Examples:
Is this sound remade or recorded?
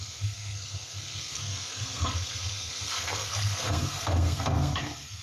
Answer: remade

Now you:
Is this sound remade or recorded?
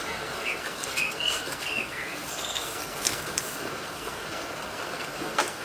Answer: remade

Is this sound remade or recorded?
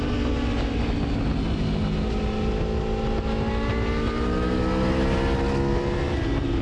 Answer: recorded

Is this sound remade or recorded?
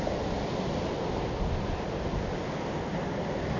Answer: recorded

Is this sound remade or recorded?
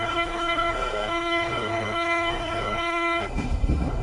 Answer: remade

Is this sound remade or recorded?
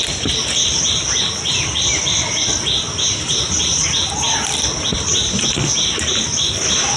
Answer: recorded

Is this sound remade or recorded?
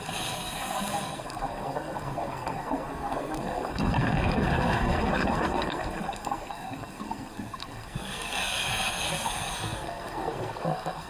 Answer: remade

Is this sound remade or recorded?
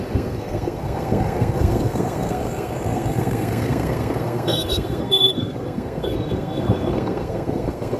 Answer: remade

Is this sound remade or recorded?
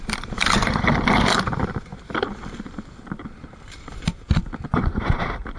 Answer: recorded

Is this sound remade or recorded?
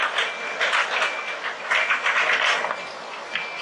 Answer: recorded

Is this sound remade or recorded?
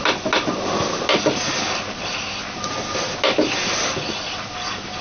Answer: recorded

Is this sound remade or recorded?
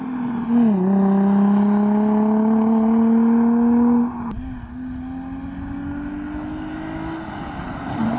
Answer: recorded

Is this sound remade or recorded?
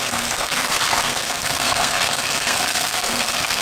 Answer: remade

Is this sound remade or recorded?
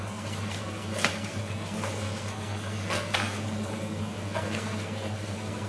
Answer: remade